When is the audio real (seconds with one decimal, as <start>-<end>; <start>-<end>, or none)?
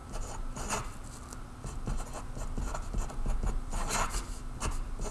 0.0-5.1